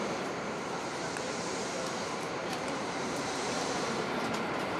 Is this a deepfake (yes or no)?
yes